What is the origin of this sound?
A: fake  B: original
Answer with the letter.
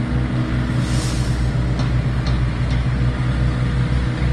B